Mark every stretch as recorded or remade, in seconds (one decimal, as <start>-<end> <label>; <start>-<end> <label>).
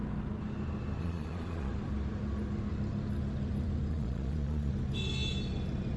0.0-1.0 recorded; 1.0-1.7 remade; 1.7-3.9 recorded; 3.9-4.7 remade; 4.7-6.0 recorded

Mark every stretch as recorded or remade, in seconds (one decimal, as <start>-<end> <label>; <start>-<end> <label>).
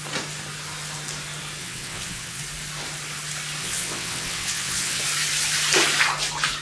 0.0-1.6 recorded; 1.6-2.4 remade; 2.4-3.6 recorded; 3.6-5.0 remade; 5.0-6.6 recorded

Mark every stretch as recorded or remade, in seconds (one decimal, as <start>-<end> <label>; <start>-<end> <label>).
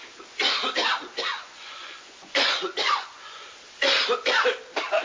0.0-1.3 recorded; 1.3-3.5 remade; 3.5-5.0 recorded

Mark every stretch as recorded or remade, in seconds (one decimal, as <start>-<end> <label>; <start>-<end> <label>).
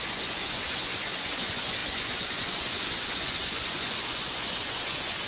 0.0-5.3 remade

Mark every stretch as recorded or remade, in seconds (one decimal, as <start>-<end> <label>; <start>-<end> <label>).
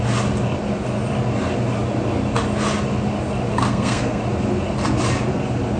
0.0-3.5 recorded; 3.5-4.2 remade; 4.2-5.8 recorded